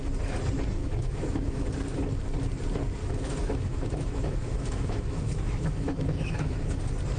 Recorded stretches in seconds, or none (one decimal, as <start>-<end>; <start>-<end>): 0.0-0.8; 1.7-3.0; 6.8-7.2